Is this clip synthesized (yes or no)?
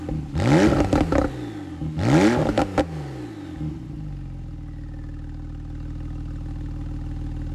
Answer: no